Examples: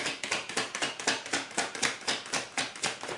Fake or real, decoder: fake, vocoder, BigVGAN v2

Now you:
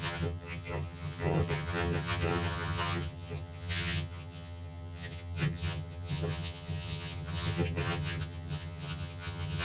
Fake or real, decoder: fake, vocoder, HiFi-GAN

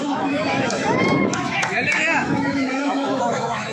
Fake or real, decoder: fake, autoencoder, DAC-VAE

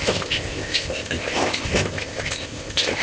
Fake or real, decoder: fake, codec, ZipCodec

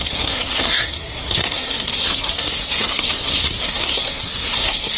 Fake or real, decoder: fake, codec, SNAC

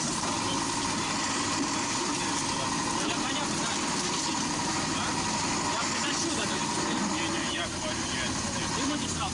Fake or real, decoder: real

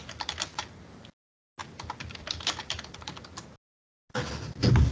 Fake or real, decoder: real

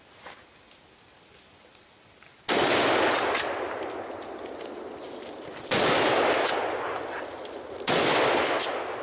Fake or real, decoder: real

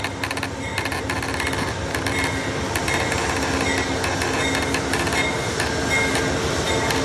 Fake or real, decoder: real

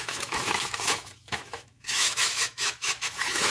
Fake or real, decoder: fake, autoencoder, DAC-VAE